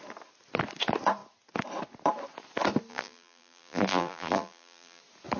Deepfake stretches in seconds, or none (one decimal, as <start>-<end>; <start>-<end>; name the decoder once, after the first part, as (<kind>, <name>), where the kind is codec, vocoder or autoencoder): 2.9-5.0 (vocoder, BigVGAN v2)